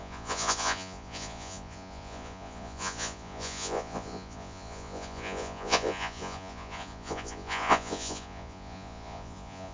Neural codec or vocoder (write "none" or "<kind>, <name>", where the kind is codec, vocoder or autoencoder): vocoder, Vocos